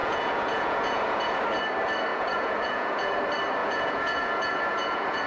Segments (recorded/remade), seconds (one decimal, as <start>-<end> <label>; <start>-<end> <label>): 0.0-1.4 remade; 1.4-2.1 recorded; 2.1-3.2 remade; 3.2-3.6 recorded; 3.6-5.3 remade